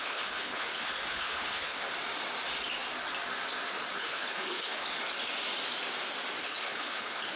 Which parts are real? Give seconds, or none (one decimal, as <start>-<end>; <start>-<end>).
1.9-4.0; 4.8-6.4